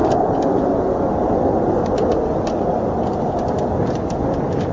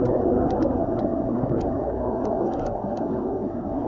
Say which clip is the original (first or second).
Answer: first